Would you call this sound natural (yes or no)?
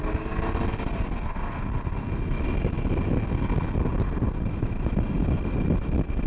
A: yes